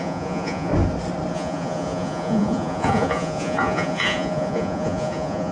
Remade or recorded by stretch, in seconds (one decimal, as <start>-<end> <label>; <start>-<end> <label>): 0.0-0.7 remade; 0.7-1.3 recorded; 1.3-5.5 remade